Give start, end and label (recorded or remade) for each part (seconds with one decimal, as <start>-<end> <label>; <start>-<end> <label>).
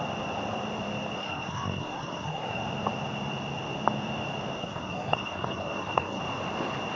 0.0-1.2 recorded; 1.2-2.6 remade; 2.6-4.6 recorded; 4.6-6.2 remade; 6.2-7.0 recorded